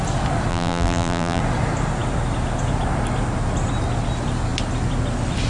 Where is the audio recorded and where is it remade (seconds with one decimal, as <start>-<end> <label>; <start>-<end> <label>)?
0.0-0.5 recorded; 0.5-1.4 remade; 1.4-5.5 recorded